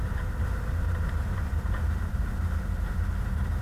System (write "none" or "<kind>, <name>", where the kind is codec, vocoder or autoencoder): vocoder, BigVGAN v2